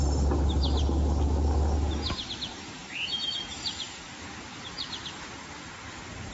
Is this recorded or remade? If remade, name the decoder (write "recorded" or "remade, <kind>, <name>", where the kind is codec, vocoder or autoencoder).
recorded